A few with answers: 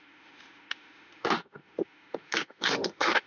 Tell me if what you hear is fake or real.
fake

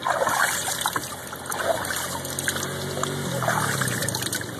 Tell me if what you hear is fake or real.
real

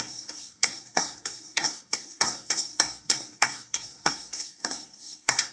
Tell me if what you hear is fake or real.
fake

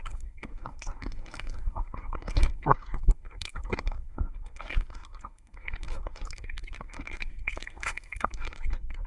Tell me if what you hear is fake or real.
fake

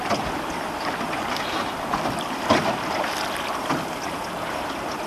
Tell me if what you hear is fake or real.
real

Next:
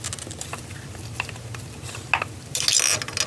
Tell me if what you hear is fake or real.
real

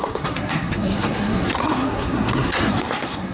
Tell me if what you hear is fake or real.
fake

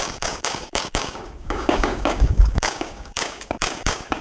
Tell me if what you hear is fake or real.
fake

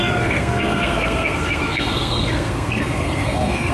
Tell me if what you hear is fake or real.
fake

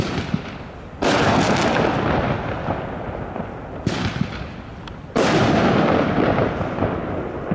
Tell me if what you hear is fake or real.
real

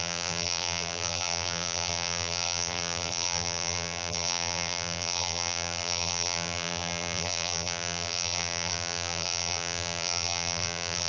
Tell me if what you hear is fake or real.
fake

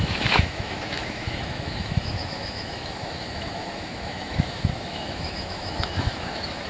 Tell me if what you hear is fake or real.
fake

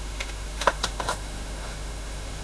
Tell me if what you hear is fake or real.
fake